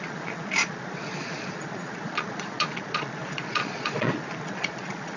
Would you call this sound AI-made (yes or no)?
yes